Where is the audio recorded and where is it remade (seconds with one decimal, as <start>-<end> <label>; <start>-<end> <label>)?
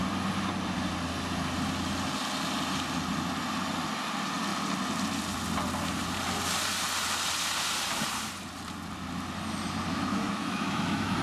0.0-9.9 recorded; 9.9-11.2 remade